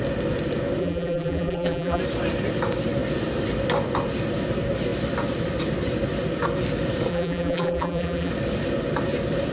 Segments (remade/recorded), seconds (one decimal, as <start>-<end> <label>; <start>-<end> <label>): 0.0-0.8 recorded; 0.8-2.0 remade; 2.0-7.1 recorded; 7.1-8.3 remade; 8.3-9.5 recorded